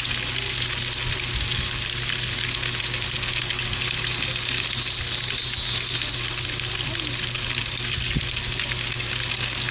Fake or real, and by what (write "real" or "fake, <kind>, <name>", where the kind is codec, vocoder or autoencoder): real